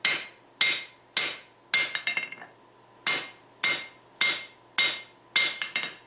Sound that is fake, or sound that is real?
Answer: real